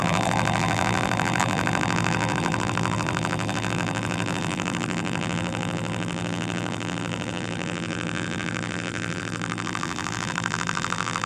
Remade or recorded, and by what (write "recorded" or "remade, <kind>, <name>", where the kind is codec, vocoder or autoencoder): remade, vocoder, BigVGAN v2